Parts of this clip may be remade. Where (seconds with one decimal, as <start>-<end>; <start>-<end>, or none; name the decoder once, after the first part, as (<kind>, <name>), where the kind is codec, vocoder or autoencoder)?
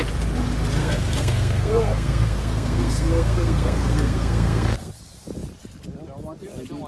0.8-4.9 (codec, SNAC)